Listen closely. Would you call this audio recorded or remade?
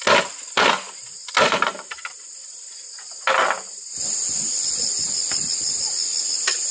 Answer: recorded